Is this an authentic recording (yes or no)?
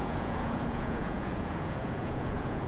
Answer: no